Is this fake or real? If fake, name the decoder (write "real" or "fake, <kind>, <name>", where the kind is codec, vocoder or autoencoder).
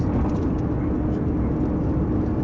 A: real